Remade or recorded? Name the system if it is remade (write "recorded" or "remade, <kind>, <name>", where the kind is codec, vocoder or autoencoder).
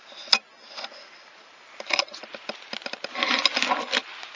recorded